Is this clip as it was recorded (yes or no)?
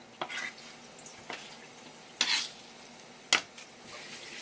yes